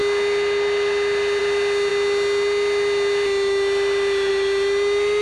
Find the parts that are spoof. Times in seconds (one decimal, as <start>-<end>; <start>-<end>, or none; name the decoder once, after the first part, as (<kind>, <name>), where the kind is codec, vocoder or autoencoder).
none